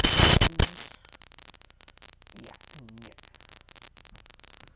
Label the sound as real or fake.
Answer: real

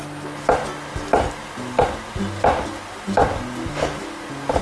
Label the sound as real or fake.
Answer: real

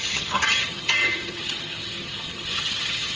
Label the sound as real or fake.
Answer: fake